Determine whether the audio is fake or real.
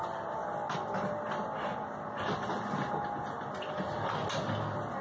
real